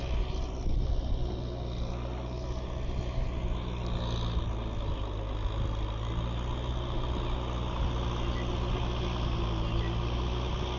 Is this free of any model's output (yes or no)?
yes